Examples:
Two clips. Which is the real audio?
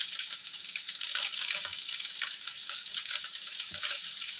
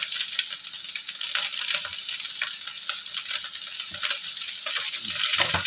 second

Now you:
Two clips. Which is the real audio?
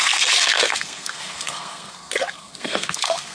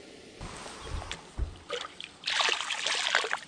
second